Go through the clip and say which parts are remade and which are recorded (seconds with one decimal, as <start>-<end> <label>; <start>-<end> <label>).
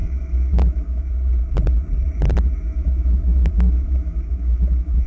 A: 0.0-1.1 remade; 1.1-2.7 recorded; 2.7-5.1 remade